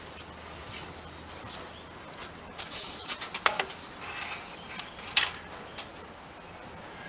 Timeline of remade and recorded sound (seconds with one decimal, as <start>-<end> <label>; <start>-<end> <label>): 0.0-2.5 recorded; 2.5-3.1 remade; 3.1-7.1 recorded